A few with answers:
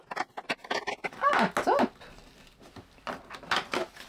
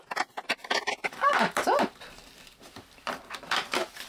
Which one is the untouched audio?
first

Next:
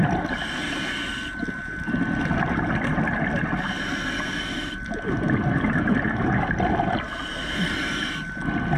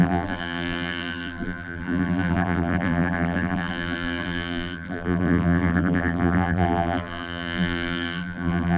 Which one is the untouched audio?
first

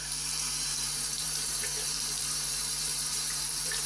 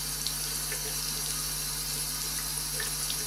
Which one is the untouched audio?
second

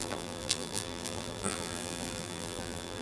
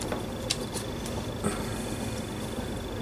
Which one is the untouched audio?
second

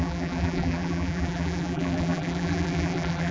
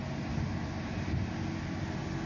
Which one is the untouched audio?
second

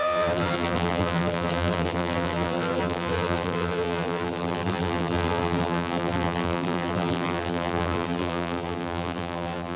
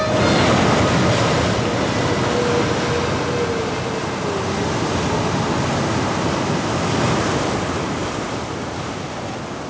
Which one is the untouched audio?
second